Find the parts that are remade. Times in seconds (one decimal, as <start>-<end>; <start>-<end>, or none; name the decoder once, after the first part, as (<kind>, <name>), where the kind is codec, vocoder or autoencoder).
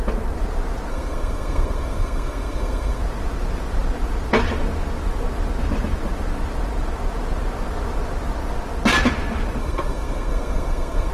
0.9-3.0 (codec, SNAC); 9.6-11.1